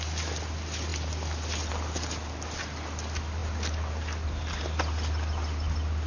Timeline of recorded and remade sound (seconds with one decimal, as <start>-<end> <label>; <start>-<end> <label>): 0.0-6.1 recorded